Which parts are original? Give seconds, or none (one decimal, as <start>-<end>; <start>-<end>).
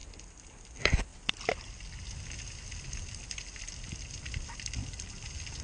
0.0-5.6